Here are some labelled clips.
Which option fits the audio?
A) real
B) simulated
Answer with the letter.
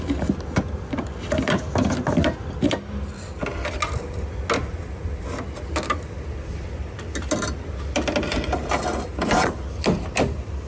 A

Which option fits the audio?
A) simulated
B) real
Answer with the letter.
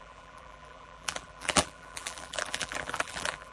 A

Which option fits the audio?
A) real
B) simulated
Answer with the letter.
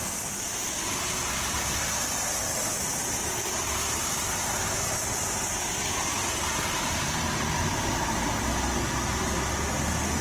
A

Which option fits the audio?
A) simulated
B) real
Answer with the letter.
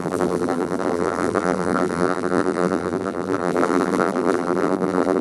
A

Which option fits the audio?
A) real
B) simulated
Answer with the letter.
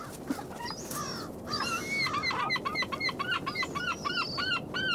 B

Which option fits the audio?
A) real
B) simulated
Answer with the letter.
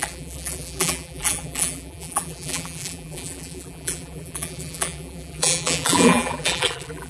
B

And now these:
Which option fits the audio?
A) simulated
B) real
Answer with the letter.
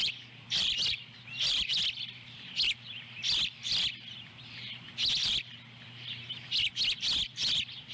A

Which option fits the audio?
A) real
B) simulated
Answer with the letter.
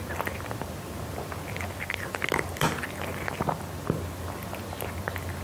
A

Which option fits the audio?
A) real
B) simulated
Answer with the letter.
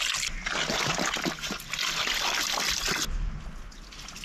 A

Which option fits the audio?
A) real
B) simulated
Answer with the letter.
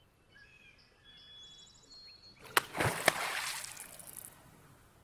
A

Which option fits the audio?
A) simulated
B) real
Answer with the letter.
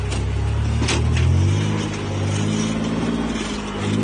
B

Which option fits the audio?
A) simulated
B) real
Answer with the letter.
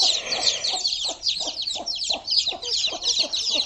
A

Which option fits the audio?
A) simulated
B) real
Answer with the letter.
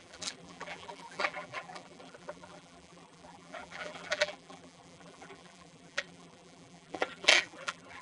A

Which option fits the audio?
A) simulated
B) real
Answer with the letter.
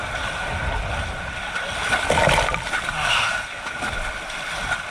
B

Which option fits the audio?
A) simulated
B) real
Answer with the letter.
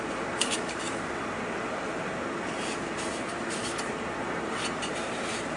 A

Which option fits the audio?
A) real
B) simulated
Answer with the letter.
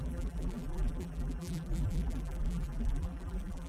B